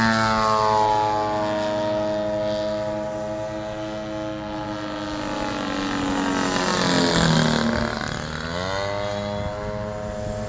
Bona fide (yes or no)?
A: yes